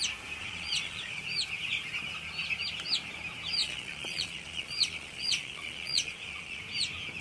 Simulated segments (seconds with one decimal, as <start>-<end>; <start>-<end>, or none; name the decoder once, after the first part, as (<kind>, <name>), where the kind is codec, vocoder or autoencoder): 0.4-1.2 (vocoder, Vocos); 3.6-6.6